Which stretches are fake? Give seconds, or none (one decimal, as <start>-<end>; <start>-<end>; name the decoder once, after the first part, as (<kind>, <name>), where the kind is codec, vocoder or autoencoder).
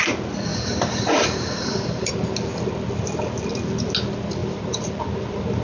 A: 0.5-2.1 (vocoder, BigVGAN v2); 4.4-4.9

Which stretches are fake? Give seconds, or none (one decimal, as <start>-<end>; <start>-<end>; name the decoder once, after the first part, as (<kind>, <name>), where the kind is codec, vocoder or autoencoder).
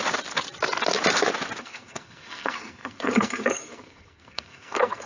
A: 1.6-5.1 (codec, SNAC)